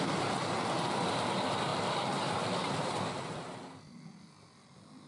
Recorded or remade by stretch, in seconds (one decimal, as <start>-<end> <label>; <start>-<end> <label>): 0.0-5.1 recorded